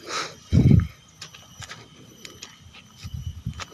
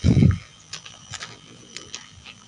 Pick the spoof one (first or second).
second